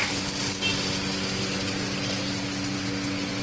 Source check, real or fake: real